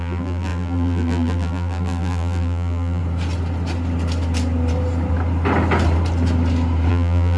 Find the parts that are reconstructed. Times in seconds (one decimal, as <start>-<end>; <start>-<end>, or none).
0.0-3.0; 6.9-7.4